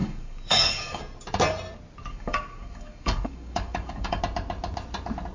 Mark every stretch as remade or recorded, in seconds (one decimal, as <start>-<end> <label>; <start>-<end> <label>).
0.0-1.0 remade; 1.0-2.1 recorded; 2.1-4.2 remade; 4.2-5.3 recorded